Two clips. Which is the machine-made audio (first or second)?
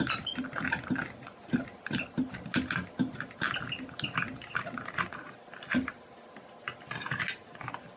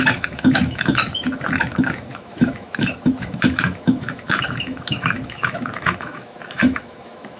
second